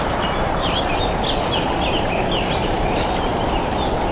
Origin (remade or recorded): recorded